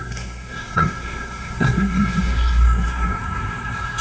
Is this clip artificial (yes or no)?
yes